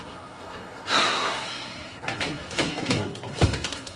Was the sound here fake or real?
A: fake